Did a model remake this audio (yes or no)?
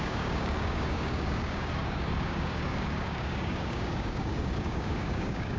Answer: yes